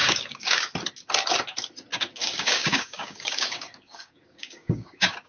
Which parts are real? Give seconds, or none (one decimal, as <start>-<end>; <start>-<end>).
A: 0.7-1.9